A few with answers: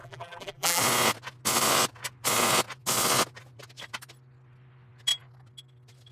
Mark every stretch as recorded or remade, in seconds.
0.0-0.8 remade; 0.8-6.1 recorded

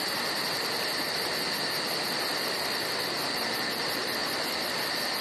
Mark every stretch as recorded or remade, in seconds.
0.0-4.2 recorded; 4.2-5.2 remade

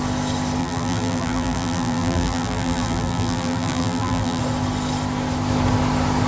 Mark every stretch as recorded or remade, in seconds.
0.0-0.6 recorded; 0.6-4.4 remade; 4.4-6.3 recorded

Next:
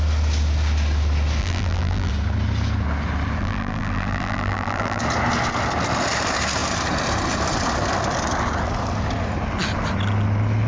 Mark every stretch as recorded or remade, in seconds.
0.0-1.4 recorded; 1.4-2.1 remade; 2.1-3.4 recorded; 3.4-5.0 remade; 5.0-10.7 recorded

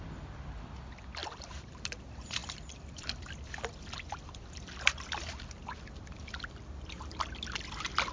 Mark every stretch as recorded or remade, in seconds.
0.0-1.2 recorded; 1.2-1.7 remade; 1.7-2.4 recorded; 2.4-6.5 remade; 6.5-8.1 recorded

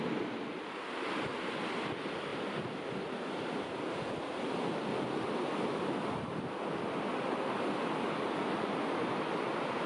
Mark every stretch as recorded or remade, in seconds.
0.0-2.3 recorded; 2.3-4.2 remade; 4.2-9.9 recorded